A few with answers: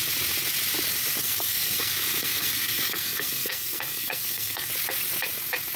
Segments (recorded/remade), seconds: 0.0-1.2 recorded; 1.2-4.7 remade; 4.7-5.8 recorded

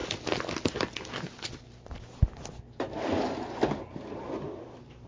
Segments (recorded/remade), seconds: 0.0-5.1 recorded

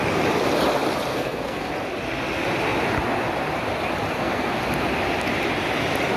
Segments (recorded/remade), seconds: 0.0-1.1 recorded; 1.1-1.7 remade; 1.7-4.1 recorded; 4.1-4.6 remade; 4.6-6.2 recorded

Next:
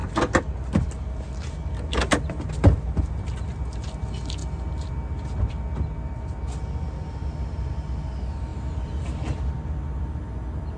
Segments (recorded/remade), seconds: 0.0-10.8 recorded

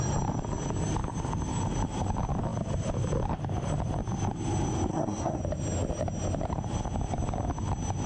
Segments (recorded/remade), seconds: 0.0-4.9 recorded; 4.9-5.4 remade; 5.4-8.1 recorded